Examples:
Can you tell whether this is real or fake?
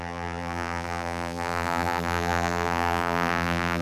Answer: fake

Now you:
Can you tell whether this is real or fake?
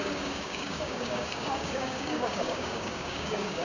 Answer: fake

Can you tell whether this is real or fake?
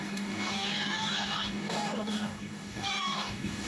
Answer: fake